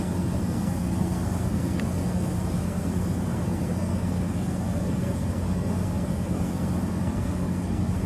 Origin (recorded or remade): remade